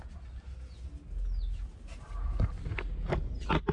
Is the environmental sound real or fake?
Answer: real